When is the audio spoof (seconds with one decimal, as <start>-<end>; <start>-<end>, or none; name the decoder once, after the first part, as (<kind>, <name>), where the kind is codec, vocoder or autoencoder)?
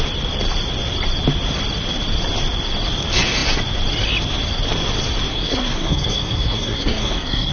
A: 5.3-7.5 (codec, SNAC)